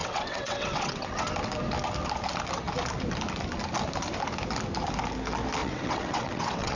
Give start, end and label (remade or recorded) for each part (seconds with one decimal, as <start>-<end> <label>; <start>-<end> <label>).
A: 0.0-1.3 remade; 1.3-5.6 recorded; 5.6-6.8 remade